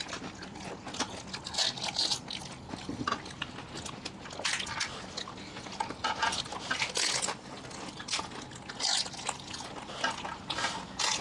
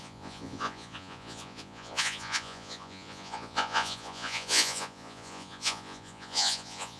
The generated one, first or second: second